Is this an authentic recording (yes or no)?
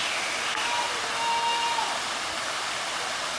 yes